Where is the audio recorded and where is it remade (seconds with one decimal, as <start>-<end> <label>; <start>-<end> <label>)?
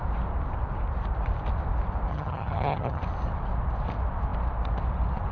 0.0-2.1 recorded; 2.1-3.0 remade; 3.0-5.3 recorded